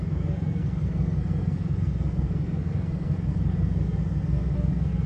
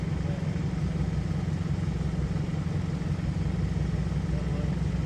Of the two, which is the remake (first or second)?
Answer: first